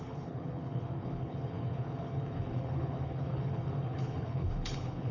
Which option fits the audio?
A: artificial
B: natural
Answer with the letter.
A